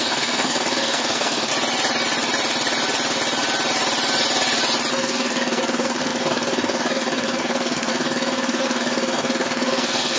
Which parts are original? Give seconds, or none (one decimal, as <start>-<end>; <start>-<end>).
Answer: 1.5-4.9